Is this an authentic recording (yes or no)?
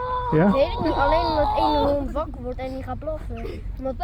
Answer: yes